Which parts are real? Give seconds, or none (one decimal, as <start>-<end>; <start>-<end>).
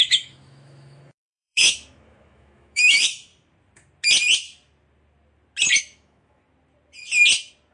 3.3-5.8; 6.4-7.7